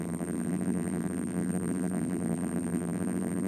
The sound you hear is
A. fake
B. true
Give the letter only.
A